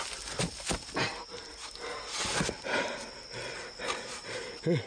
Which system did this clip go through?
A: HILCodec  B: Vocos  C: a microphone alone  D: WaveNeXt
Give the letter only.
C